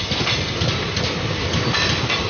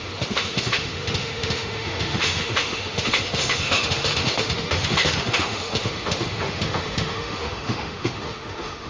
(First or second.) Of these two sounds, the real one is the first